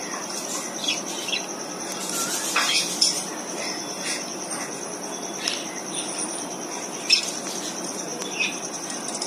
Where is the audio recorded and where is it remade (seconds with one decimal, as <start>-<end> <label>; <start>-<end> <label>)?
0.0-8.1 recorded; 8.1-8.8 remade; 8.8-9.3 recorded